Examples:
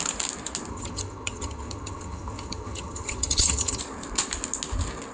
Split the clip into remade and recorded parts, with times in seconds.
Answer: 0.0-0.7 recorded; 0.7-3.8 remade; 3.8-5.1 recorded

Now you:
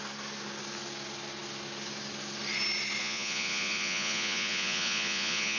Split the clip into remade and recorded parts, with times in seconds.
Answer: 0.0-3.0 recorded; 3.0-5.6 remade

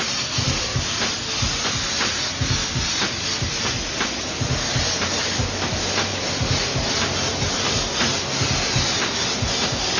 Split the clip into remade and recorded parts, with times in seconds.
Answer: 0.0-10.0 recorded